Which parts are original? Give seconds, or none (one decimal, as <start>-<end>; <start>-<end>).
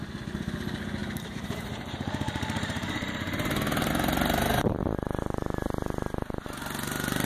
0.0-1.0; 3.9-4.5; 5.2-7.3